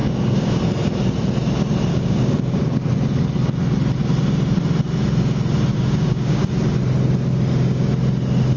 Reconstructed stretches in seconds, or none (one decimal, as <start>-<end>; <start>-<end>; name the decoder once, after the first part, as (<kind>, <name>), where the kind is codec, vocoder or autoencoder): 0.0-0.6 (codec, DAC); 1.9-2.9; 5.7-6.5

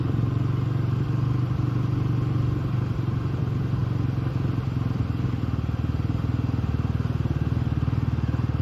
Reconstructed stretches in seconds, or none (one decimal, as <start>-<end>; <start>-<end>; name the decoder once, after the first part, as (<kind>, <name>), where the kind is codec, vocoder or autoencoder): none

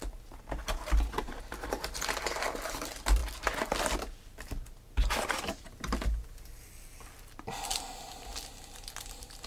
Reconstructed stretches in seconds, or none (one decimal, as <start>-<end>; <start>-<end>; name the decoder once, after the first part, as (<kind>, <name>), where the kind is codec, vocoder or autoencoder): none

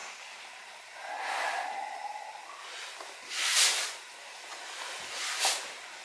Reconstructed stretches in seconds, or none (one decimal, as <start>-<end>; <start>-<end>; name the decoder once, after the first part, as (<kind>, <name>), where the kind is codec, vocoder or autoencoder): none

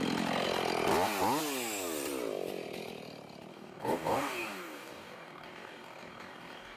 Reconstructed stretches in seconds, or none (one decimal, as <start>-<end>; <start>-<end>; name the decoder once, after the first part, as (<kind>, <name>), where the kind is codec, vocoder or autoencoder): 3.5-6.8 (codec, DAC)

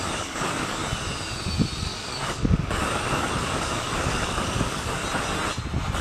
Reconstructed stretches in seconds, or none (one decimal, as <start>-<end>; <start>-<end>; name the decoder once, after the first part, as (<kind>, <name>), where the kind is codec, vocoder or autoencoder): 0.0-0.8 (codec, DAC); 1.8-5.0

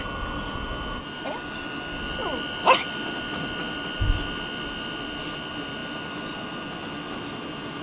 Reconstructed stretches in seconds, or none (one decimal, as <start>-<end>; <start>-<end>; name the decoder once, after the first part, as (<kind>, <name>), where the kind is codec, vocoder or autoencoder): none